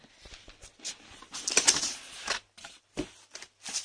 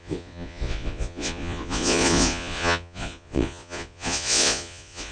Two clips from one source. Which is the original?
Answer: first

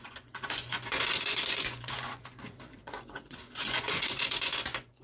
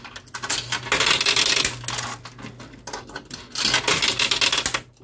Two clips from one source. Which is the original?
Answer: second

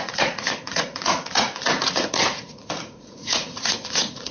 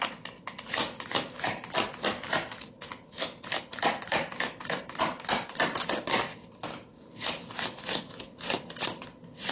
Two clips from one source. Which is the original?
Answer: second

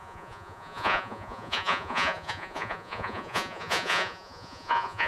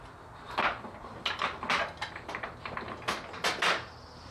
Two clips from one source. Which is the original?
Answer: second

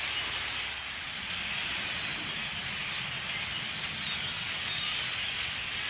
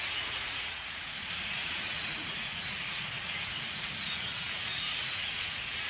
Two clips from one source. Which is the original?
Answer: first